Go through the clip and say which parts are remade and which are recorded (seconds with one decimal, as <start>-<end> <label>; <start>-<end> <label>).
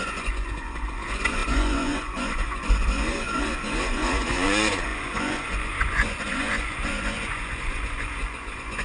0.0-8.8 remade